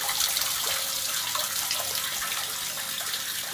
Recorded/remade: recorded